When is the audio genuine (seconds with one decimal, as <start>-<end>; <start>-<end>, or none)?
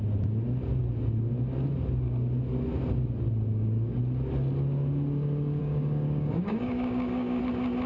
0.0-3.5; 4.0-5.6; 7.4-7.9